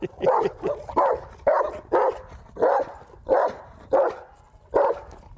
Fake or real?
real